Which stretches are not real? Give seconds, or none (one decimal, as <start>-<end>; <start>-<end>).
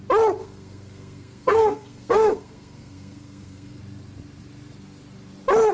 0.4-3.8